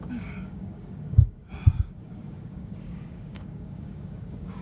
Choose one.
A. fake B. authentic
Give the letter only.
A